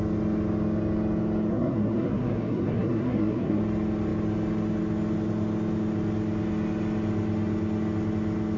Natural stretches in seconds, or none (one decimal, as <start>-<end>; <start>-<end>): 0.0-1.5; 3.6-8.6